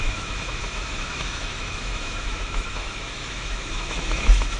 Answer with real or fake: fake